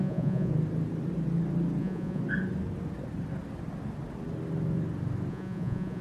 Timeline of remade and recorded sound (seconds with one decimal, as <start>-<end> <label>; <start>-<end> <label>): 0.0-0.5 remade; 0.5-1.8 recorded; 1.8-2.2 remade; 2.2-5.3 recorded; 5.3-6.0 remade